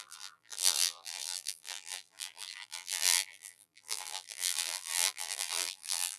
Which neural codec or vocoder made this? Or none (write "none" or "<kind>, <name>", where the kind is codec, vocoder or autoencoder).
vocoder, BigVGAN v2